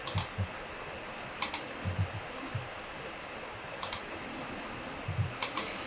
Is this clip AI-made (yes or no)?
no